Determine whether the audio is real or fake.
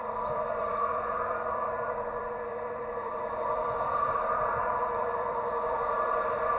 fake